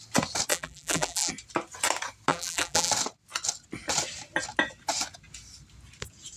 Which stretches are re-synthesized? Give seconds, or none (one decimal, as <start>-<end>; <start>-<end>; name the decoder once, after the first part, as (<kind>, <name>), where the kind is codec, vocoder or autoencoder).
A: 0.5-1.3 (vocoder, BigVGAN v2); 2.3-2.9